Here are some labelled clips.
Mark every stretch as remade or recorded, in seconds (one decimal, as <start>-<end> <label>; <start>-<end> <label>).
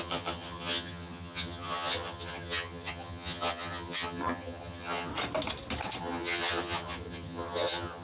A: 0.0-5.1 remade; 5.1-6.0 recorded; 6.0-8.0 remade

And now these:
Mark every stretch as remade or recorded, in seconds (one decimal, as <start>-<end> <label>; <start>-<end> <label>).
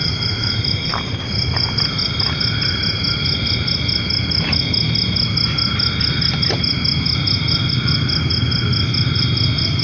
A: 0.0-9.8 recorded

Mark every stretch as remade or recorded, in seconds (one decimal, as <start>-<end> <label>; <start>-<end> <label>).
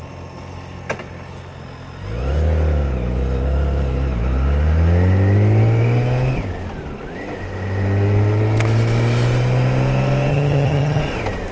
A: 0.0-10.3 recorded; 10.3-11.0 remade; 11.0-11.5 recorded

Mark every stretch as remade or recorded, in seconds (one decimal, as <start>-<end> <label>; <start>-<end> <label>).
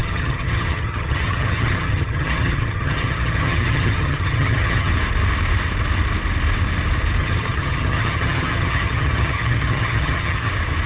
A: 0.0-4.9 remade; 4.9-7.2 recorded; 7.2-10.5 remade; 10.5-10.9 recorded